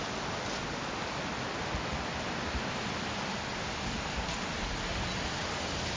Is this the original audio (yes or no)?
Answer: yes